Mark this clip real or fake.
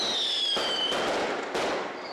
real